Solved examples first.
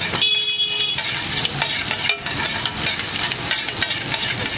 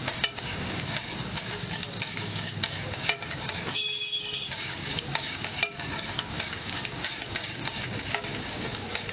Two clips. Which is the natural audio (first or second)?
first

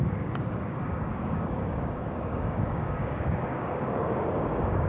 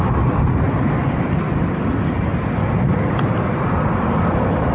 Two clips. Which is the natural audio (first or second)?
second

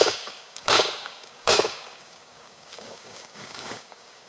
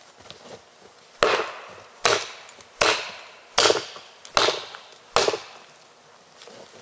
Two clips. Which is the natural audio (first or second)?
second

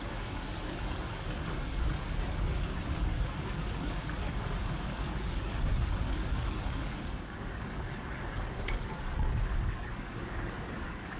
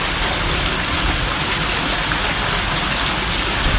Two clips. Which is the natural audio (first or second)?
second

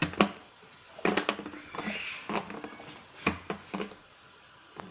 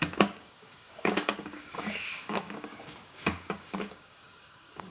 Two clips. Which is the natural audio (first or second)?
first